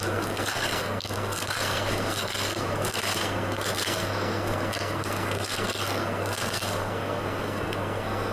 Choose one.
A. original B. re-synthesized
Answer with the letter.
B